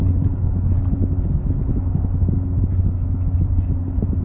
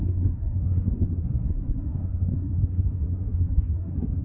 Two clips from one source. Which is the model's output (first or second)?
second